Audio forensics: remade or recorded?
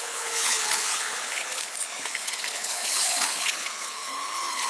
remade